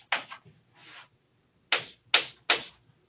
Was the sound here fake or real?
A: real